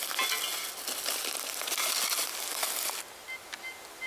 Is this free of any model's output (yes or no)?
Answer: yes